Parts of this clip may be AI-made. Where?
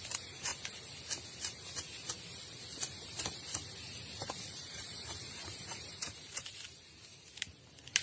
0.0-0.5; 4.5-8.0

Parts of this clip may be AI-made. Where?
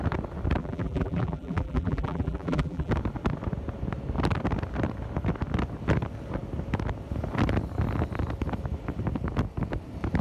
0.6-2.9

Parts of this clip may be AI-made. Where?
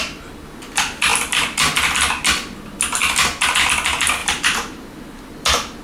4.2-5.2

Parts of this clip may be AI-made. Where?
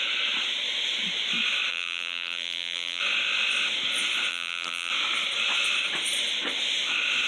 1.7-3.0; 4.3-4.9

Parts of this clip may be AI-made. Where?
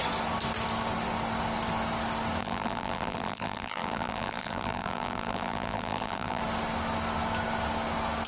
2.4-6.4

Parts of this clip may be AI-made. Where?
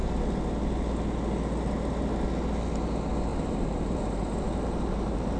3.3-5.4